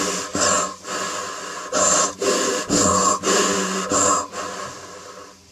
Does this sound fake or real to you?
real